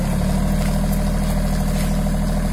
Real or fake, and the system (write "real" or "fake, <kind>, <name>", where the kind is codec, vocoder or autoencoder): real